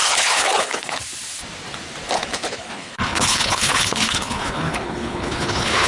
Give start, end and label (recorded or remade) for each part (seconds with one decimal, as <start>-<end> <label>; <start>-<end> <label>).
0.0-1.0 remade; 1.0-2.2 recorded; 2.2-5.9 remade